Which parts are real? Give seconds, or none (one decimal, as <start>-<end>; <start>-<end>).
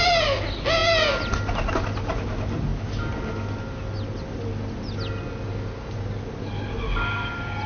0.0-7.7